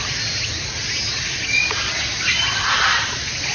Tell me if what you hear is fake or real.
real